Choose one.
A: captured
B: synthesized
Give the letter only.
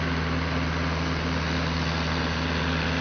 A